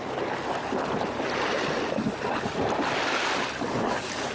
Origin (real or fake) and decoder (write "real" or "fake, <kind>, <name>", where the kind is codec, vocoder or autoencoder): real